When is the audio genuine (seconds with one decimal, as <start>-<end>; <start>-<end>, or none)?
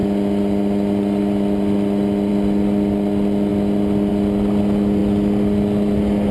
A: 0.0-6.3